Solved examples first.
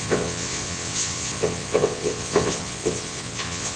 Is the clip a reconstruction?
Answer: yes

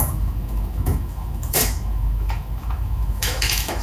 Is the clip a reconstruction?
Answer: yes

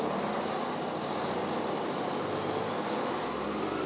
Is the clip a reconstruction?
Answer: no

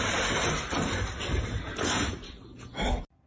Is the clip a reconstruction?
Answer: no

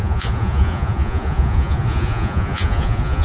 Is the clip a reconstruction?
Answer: yes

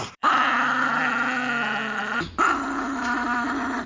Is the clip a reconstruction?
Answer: no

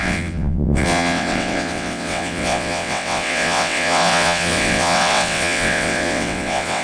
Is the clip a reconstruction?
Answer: yes